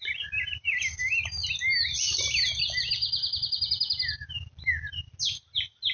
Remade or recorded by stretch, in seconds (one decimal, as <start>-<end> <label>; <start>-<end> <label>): 0.0-5.9 recorded